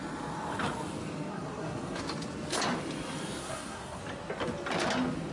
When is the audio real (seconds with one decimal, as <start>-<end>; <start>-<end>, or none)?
0.0-1.3; 2.0-3.4; 4.0-5.3